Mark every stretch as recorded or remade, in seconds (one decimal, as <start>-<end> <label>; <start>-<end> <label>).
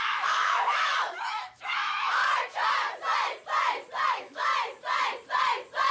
0.0-2.2 remade; 2.2-4.1 recorded; 4.1-4.5 remade; 4.5-5.9 recorded